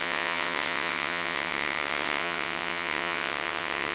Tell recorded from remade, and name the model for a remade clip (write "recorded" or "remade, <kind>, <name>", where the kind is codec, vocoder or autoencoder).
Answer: remade, vocoder, WaveNeXt